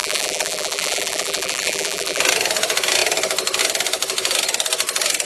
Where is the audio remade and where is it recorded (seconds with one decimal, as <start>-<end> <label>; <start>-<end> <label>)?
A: 0.0-2.2 remade; 2.2-5.2 recorded